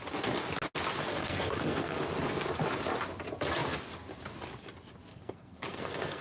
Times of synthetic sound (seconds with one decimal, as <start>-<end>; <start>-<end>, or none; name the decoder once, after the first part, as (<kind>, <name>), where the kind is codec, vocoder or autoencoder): 1.1-2.0 (codec, SNAC); 5.1-6.2